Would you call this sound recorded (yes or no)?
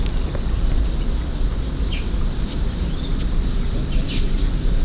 yes